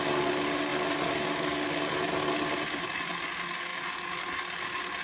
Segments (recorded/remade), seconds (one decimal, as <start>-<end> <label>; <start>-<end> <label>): 0.0-5.0 recorded